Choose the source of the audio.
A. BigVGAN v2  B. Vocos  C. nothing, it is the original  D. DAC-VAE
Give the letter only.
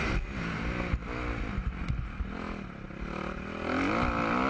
C